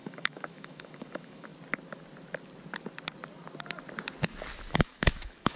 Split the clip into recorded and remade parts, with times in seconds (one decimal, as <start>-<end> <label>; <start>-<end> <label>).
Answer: 0.0-1.5 remade; 1.5-4.7 recorded; 4.7-5.6 remade